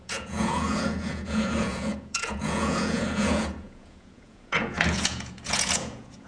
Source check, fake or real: fake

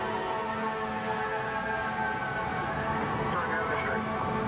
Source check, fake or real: real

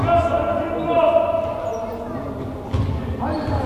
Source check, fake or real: real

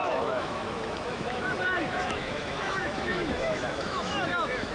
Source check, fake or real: fake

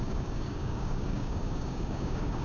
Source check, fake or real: fake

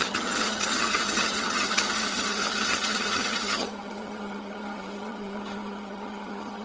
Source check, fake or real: fake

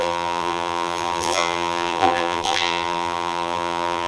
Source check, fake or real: fake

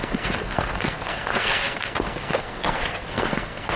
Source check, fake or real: fake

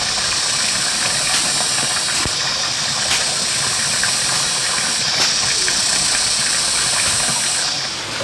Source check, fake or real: real